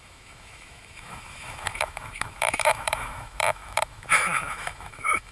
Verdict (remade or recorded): remade